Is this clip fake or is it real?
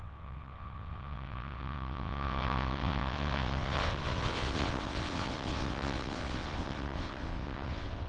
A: fake